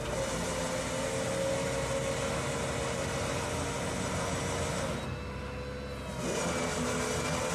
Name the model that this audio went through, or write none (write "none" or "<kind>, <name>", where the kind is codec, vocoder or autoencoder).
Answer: none